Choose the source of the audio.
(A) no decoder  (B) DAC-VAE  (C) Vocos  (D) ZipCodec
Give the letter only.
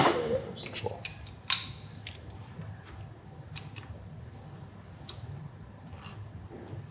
A